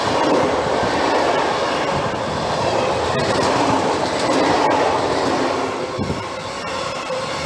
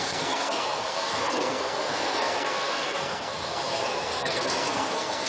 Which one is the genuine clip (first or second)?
first